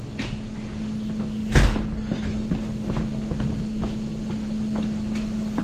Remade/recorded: recorded